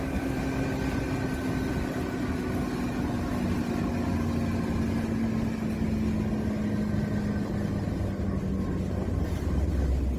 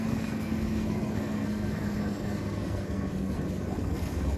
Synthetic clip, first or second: second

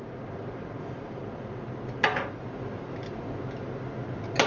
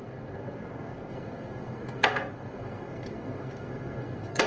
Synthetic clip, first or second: second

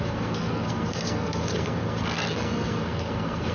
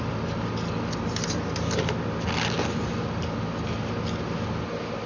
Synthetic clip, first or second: first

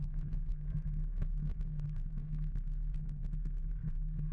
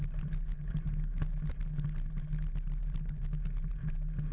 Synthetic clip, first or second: first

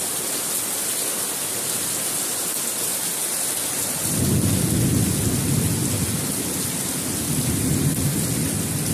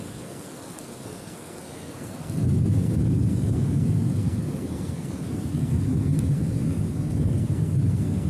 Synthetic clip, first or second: second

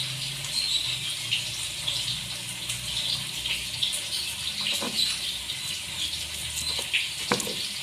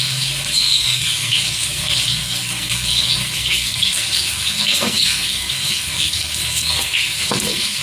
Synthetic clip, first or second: second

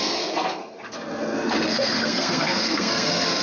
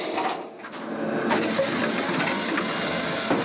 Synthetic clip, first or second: first